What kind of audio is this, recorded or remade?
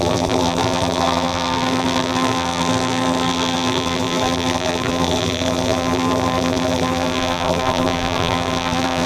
remade